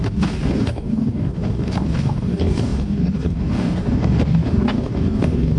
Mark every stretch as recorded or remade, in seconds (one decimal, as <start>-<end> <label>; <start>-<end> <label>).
0.0-5.6 remade